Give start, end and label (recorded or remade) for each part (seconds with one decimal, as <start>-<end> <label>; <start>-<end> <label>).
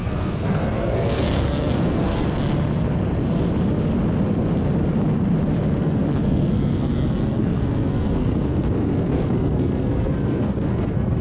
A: 0.0-2.1 remade; 2.1-5.8 recorded; 5.8-11.2 remade